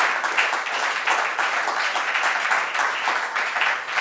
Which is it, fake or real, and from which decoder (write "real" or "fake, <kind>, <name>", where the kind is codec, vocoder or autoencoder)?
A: real